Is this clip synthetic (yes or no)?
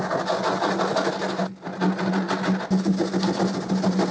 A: no